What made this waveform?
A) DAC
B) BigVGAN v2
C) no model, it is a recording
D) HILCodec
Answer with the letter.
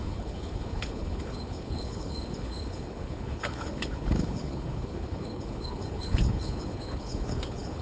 D